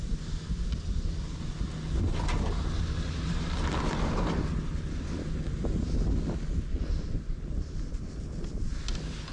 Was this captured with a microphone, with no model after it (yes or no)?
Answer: yes